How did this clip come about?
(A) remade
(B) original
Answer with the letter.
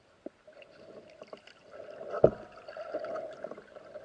B